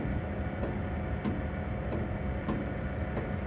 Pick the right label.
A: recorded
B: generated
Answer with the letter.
A